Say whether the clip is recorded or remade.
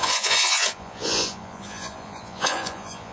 remade